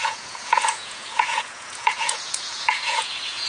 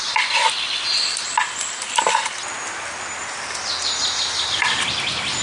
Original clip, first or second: second